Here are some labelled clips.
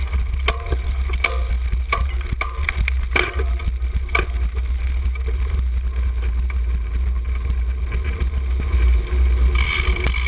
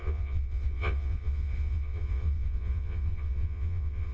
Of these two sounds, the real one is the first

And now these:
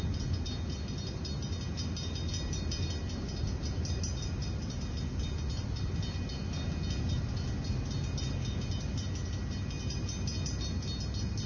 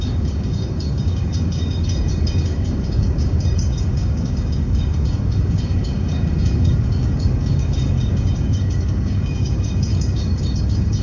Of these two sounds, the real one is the first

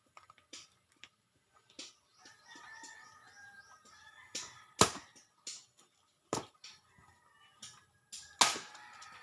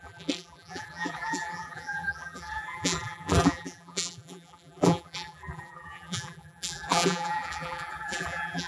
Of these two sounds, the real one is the first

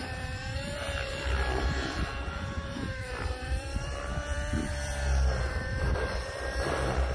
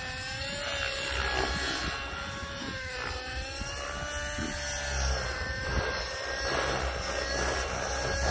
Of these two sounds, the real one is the second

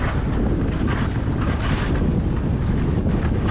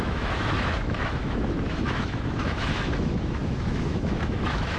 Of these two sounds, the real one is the first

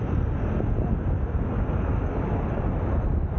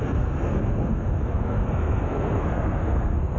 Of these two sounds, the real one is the first